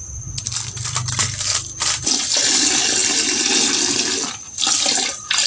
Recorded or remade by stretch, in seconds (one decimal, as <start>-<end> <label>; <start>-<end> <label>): 0.0-5.5 recorded